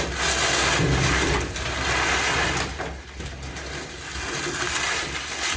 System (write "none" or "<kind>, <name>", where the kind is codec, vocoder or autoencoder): none